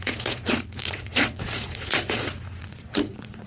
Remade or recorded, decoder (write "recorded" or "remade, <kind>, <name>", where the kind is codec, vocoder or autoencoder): remade, vocoder, Vocos